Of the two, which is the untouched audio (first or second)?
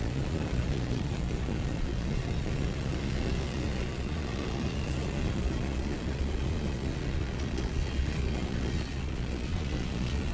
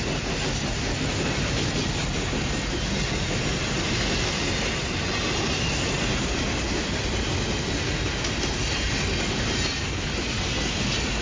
second